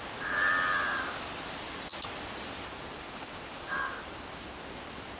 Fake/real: real